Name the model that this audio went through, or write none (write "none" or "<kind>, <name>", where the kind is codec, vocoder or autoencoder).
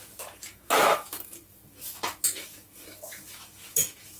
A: autoencoder, DAC-VAE